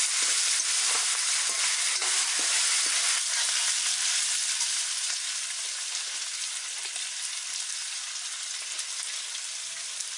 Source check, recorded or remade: remade